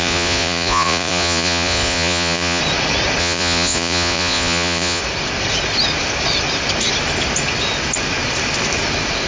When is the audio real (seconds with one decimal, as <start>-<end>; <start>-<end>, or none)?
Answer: 2.6-3.2; 5.0-9.3